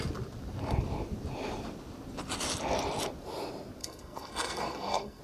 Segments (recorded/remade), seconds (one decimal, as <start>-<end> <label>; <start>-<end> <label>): 0.0-3.8 recorded; 3.8-5.2 remade